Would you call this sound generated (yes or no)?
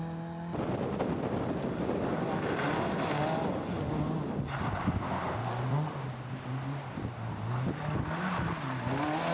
no